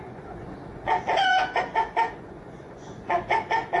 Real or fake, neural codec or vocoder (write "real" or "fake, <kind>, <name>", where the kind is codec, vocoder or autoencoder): fake, vocoder, Vocos